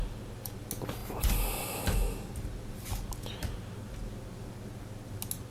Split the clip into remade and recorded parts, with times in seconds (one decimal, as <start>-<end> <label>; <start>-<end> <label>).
0.0-5.5 recorded